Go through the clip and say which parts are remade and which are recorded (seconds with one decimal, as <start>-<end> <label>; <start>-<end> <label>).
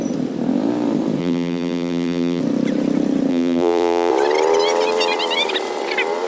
0.0-1.2 recorded; 1.2-2.4 remade; 2.4-3.3 recorded; 3.3-4.1 remade; 4.1-6.3 recorded